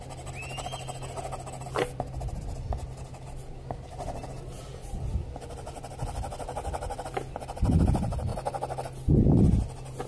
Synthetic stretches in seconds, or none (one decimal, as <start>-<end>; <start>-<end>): none